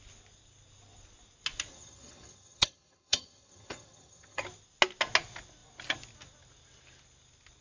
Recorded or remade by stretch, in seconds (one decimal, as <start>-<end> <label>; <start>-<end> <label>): 0.0-1.7 recorded; 1.7-4.4 remade; 4.4-7.6 recorded